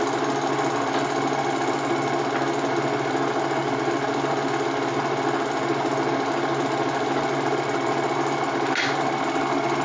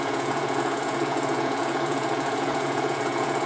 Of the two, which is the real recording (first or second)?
first